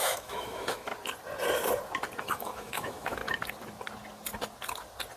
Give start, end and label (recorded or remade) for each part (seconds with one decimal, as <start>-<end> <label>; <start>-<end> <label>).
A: 0.0-0.9 remade; 0.9-2.2 recorded; 2.2-3.2 remade; 3.2-5.2 recorded